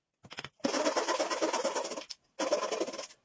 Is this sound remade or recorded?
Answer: recorded